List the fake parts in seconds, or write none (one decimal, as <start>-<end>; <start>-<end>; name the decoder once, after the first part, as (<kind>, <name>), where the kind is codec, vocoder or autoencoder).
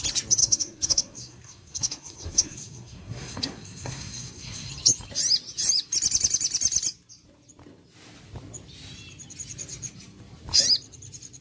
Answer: 0.4-4.7 (codec, SNAC)